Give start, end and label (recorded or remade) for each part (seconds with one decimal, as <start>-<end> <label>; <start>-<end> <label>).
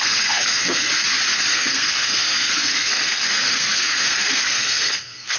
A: 0.0-0.9 remade; 0.9-1.5 recorded; 1.5-5.4 remade